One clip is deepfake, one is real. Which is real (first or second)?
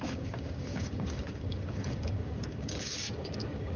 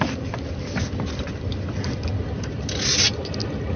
second